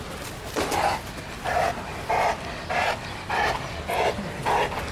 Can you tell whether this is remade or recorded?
recorded